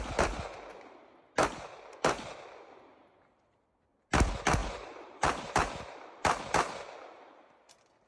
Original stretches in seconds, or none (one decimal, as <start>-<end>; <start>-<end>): 0.0-4.6; 5.7-8.1